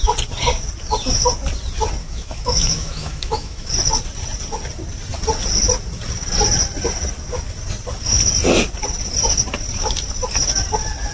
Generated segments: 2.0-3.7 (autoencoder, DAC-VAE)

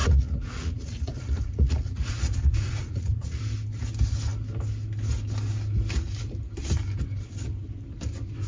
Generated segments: 0.0-3.4 (vocoder, Vocos)

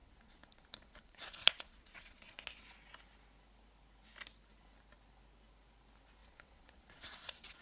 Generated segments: 0.0-2.4 (vocoder, Vocos); 6.2-7.6

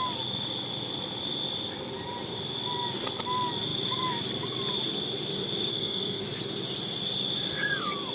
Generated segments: 5.7-6.2 (codec, SNAC)

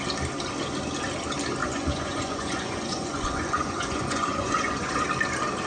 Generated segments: 1.6-5.0 (vocoder, Vocos)

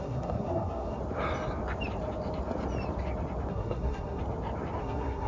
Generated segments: 0.0-1.0 (codec, SNAC); 3.5-4.2; 4.8-5.3

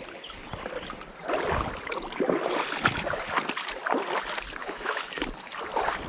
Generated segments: 4.6-5.2 (autoencoder, DAC-VAE)